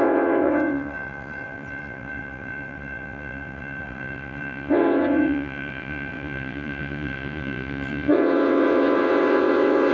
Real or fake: fake